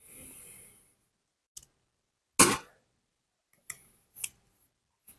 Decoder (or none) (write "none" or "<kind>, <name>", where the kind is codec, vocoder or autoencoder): none